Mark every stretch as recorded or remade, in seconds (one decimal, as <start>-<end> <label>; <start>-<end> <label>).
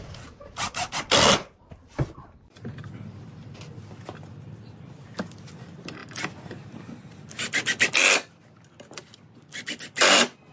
0.0-10.5 recorded